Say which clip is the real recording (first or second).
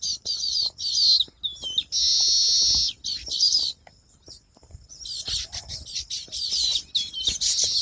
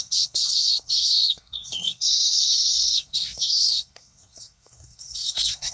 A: first